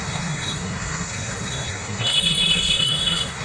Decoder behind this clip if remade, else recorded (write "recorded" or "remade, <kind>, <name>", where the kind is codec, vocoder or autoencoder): remade, codec, SNAC